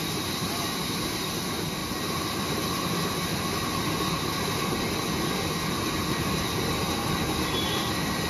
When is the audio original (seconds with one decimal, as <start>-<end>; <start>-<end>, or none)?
0.0-8.3